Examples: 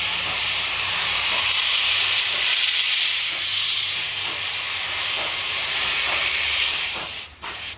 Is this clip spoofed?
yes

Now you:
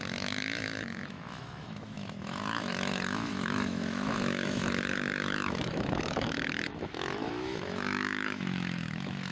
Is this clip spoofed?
yes